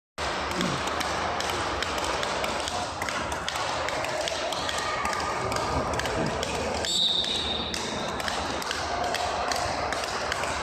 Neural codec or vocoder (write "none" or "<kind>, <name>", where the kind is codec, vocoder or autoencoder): none